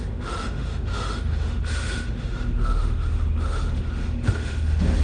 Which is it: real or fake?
fake